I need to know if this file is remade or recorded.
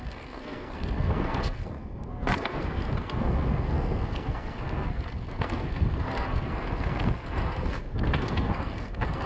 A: remade